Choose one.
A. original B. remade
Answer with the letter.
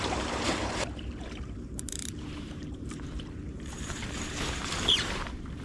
B